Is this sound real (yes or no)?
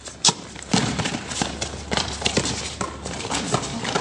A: no